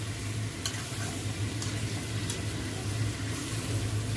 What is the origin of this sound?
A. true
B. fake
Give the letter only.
A